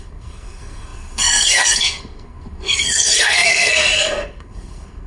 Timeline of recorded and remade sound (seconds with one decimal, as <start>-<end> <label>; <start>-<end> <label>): 0.0-5.1 remade